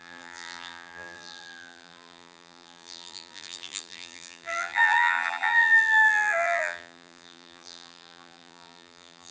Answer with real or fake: fake